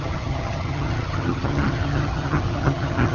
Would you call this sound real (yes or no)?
no